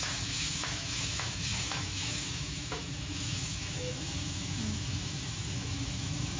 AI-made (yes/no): yes